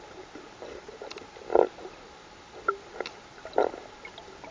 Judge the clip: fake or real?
real